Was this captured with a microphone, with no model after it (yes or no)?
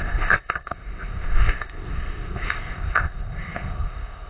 no